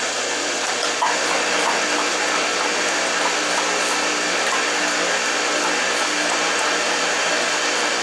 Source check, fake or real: real